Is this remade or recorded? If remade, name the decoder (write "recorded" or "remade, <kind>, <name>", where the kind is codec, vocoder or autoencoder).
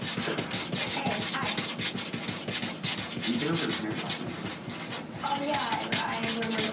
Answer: recorded